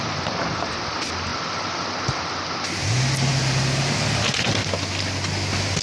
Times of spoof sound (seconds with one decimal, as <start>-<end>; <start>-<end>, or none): none